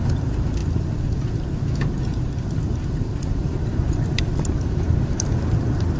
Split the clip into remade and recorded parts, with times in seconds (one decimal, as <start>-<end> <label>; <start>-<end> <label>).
0.0-6.0 recorded